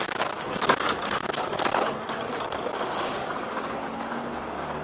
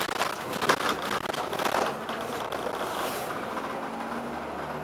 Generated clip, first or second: first